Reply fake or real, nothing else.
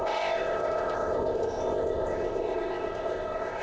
fake